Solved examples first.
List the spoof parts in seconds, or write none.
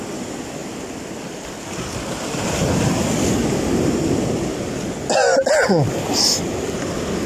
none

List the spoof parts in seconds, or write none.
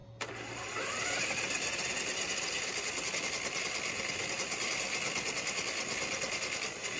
none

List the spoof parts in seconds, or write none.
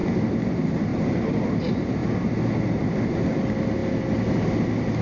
0.9-1.6 (vocoder, BigVGAN v2)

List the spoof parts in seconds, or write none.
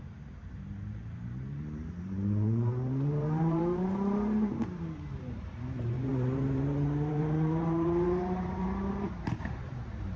0.0-10.2 (vocoder, BigVGAN v2)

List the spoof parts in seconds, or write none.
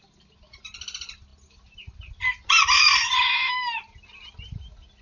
none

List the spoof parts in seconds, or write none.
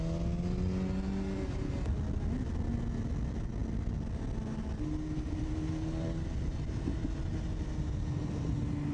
none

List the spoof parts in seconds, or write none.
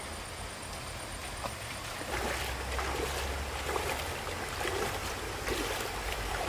1.2-1.9 (vocoder, BigVGAN v2); 5.0-6.5